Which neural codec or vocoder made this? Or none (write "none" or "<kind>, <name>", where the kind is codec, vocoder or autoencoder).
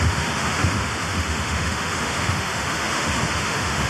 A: autoencoder, DAC-VAE